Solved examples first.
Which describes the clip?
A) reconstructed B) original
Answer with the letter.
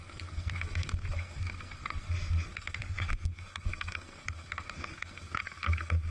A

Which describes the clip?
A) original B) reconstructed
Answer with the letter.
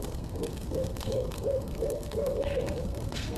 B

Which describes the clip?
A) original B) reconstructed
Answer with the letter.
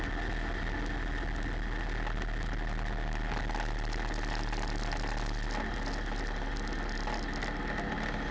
A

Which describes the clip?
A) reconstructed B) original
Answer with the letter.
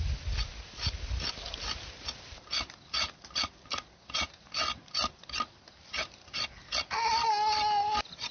B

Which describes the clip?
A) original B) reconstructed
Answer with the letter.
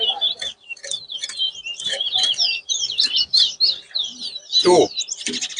A